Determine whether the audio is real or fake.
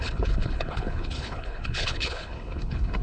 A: fake